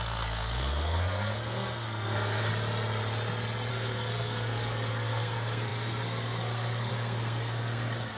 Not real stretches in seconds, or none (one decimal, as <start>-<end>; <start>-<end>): 0.0-2.5; 3.7-8.2